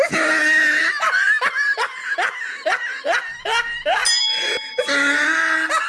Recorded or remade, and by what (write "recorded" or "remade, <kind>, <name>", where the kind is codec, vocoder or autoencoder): recorded